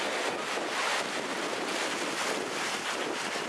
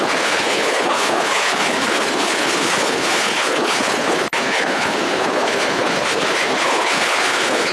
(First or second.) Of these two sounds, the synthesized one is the second